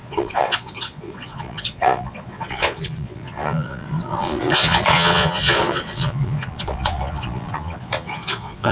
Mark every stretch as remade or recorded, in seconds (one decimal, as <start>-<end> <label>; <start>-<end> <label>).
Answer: 0.0-8.7 remade